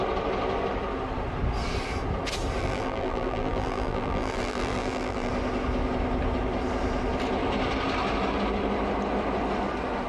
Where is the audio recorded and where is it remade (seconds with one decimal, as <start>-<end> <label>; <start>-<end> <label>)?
0.0-2.6 recorded; 2.6-5.3 remade; 5.3-10.1 recorded